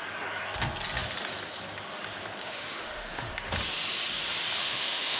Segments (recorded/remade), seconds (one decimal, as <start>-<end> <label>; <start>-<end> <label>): 0.0-2.4 recorded; 2.4-3.3 remade; 3.3-4.6 recorded; 4.6-5.2 remade